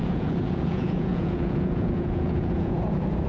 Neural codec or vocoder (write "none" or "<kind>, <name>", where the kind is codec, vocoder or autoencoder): vocoder, Vocos